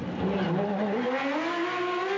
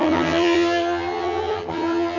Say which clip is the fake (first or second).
second